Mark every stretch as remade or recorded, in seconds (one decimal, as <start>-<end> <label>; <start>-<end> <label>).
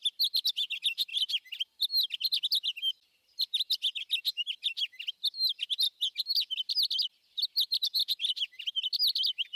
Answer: 0.0-9.6 recorded